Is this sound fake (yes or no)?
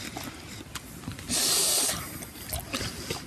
no